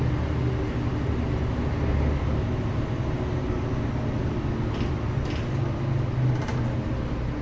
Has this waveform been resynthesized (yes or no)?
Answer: no